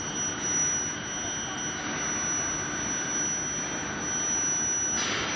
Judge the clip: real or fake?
real